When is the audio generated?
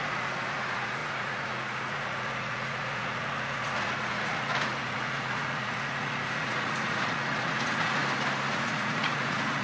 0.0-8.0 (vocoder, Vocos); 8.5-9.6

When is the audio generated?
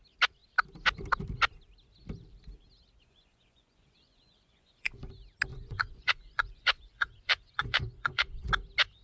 3.0-5.1 (vocoder, Vocos); 5.5-8.5